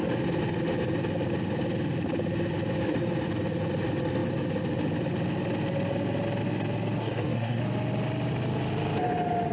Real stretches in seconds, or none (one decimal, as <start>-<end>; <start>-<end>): 0.0-7.0; 7.6-9.5